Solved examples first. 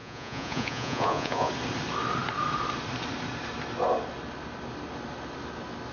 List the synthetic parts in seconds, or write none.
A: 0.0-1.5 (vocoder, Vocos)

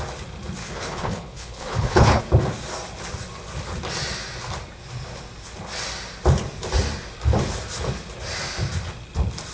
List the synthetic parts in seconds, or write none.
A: 0.6-2.2 (codec, HILCodec)

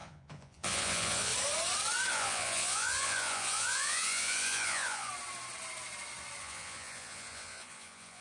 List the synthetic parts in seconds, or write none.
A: 0.0-1.3 (vocoder, Vocos); 2.1-5.1; 6.4-8.2

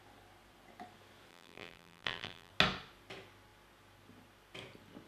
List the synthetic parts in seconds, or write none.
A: 1.3-2.5 (vocoder, BigVGAN v2)

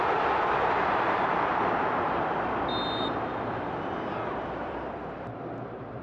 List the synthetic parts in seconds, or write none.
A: 0.0-1.5 (vocoder, BigVGAN v2); 4.6-6.0

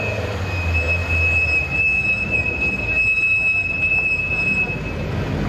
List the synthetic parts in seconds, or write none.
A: 1.0-4.3 (vocoder, BigVGAN v2)